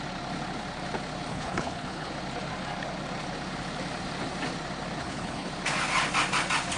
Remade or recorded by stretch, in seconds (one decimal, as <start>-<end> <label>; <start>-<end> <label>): 0.0-1.3 recorded; 1.3-2.1 remade; 2.1-5.0 recorded; 5.0-5.5 remade; 5.5-6.8 recorded